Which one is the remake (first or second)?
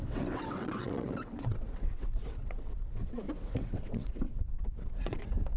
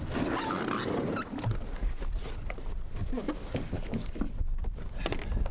first